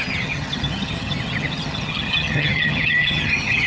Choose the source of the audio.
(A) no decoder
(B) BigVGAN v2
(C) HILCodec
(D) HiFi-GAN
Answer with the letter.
D